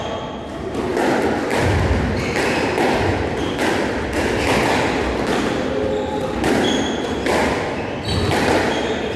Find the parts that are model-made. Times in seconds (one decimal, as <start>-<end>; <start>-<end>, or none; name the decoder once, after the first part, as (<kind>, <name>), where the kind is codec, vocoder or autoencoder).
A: none